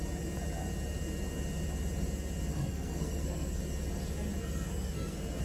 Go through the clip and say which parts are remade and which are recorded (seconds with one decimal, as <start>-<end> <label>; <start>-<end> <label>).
0.0-2.5 recorded; 2.5-3.6 remade; 3.6-4.4 recorded; 4.4-5.4 remade